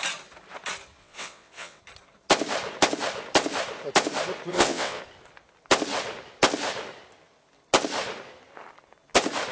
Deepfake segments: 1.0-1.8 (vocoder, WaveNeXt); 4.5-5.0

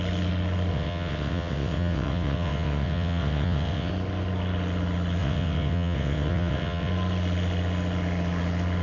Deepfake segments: 0.7-3.9 (vocoder, WaveNeXt); 5.2-6.9